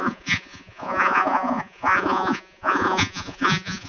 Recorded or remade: remade